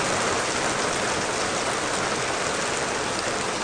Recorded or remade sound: recorded